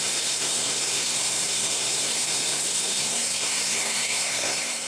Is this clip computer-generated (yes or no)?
yes